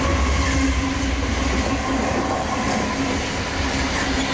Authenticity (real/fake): real